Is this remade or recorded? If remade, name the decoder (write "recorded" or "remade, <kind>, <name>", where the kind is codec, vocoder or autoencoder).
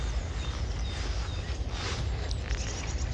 recorded